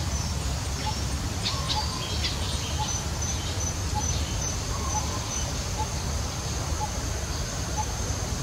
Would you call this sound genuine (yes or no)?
no